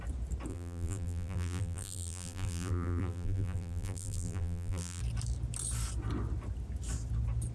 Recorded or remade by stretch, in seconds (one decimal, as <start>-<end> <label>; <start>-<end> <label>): 0.0-0.5 recorded; 0.5-5.0 remade; 5.0-7.5 recorded